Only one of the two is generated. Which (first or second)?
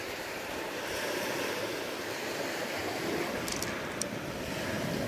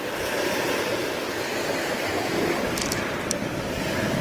first